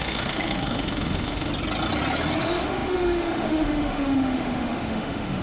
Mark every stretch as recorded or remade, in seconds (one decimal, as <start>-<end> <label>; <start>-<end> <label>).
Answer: 0.0-1.5 remade; 1.5-2.4 recorded; 2.4-5.4 remade